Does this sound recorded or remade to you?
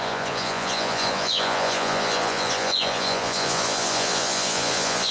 remade